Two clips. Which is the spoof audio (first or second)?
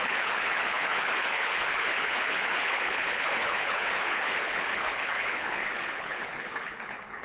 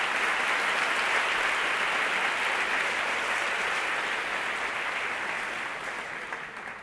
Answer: first